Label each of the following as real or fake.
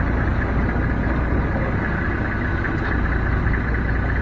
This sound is real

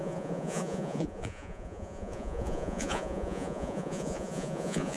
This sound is fake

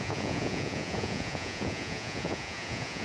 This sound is fake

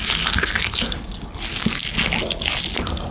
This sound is real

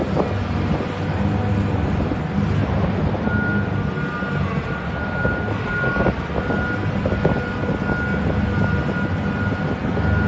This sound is real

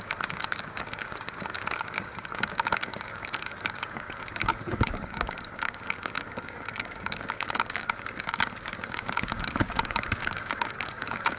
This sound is fake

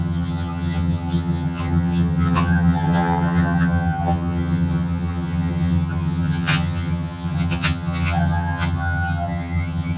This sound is fake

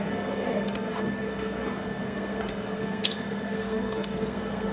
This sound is fake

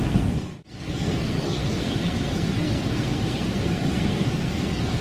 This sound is fake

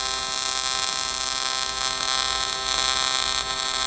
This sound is real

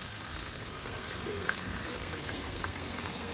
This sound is fake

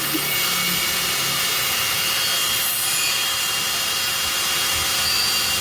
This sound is real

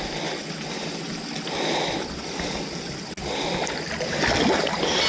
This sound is real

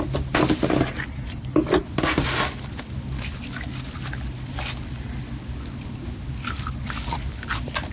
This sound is real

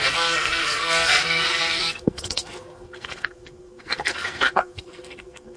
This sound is fake